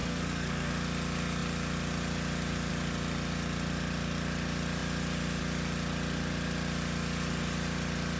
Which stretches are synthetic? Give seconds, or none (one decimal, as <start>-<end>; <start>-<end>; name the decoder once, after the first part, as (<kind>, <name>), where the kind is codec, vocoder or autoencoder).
0.0-0.7 (codec, SNAC)

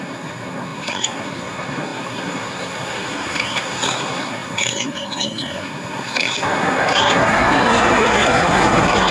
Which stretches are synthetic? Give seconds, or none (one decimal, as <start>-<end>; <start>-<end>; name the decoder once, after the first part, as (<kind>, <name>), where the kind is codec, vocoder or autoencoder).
0.0-9.1 (codec, SNAC)

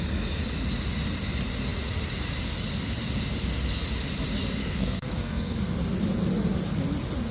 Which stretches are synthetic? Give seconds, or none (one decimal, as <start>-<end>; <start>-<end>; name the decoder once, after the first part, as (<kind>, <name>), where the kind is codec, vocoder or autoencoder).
4.6-5.7 (codec, SNAC)

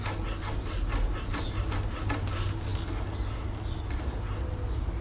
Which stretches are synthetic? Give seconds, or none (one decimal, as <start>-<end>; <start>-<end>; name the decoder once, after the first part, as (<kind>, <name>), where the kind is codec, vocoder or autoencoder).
none